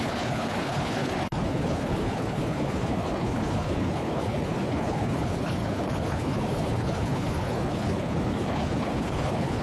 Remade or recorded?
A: remade